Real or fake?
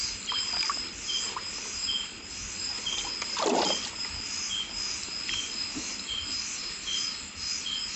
real